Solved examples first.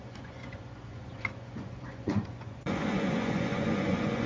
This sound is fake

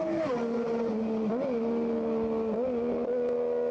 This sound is real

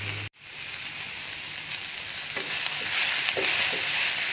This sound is real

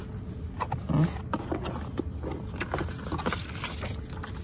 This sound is real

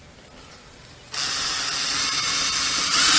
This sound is real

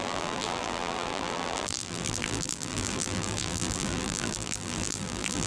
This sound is fake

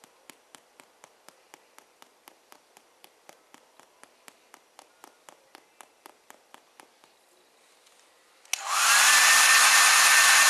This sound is real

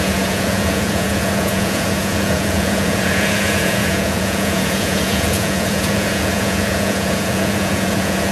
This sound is fake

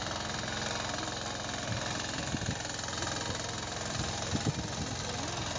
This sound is real